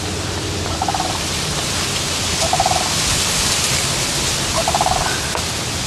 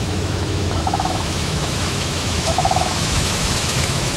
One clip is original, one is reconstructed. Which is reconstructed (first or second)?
second